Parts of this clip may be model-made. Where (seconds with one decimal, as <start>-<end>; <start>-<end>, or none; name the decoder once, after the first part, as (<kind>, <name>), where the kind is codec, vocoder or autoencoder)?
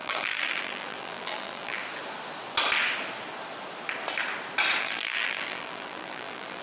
0.0-1.8 (vocoder, BigVGAN v2); 4.8-6.6